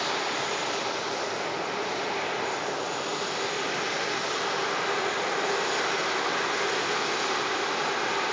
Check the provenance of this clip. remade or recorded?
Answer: recorded